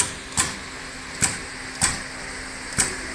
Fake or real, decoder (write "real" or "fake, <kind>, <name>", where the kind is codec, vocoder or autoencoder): real